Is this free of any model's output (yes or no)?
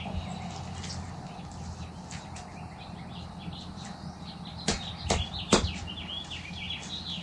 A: yes